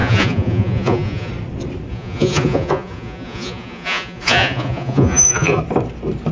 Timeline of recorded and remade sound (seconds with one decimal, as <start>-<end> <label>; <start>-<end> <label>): 0.0-1.3 remade; 1.3-1.9 recorded; 1.9-5.6 remade; 5.6-6.3 recorded